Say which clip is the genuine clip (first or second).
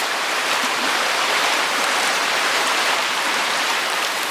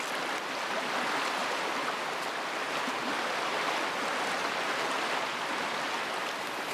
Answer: second